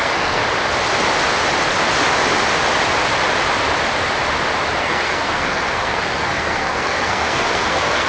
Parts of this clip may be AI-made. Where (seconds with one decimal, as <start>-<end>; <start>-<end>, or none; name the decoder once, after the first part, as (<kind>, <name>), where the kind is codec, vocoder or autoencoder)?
0.0-0.4 (codec, SNAC); 4.8-8.1